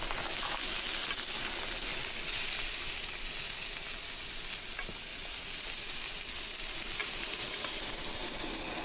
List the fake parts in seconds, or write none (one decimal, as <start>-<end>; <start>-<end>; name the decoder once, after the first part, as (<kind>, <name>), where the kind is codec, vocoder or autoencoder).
7.0-7.9 (vocoder, BigVGAN v2)